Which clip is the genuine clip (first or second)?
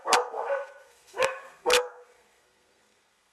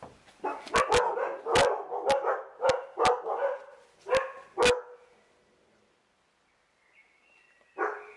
second